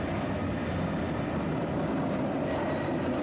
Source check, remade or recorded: recorded